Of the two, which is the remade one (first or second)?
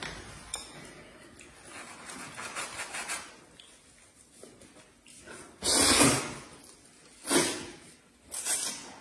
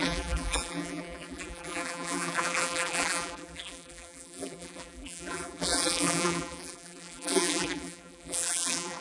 second